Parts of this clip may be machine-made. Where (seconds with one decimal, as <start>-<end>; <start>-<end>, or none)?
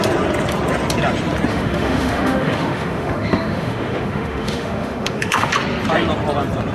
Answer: 1.5-5.5